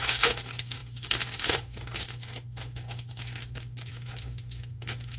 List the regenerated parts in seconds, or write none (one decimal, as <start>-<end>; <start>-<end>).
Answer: 0.0-5.2